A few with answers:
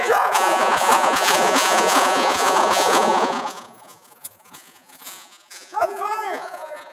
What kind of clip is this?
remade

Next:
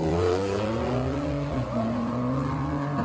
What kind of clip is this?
remade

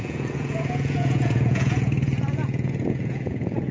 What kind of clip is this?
remade